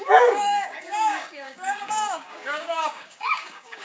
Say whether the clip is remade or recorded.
remade